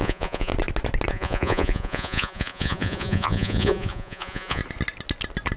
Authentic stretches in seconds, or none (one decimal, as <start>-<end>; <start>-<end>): 0.5-1.1; 4.6-5.6